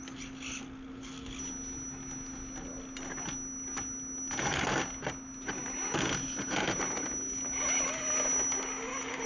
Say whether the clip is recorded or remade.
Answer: recorded